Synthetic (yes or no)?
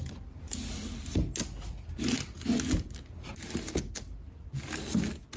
no